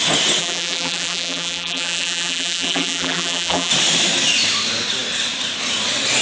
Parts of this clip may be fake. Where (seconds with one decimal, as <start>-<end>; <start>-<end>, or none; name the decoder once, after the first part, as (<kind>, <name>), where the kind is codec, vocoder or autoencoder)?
0.4-3.7 (vocoder, BigVGAN v2)